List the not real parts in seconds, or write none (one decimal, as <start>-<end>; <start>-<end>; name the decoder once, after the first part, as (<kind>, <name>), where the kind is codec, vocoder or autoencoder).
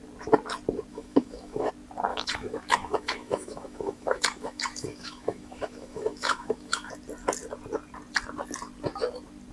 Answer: 0.9-1.7 (autoencoder, DAC-VAE); 2.1-6.9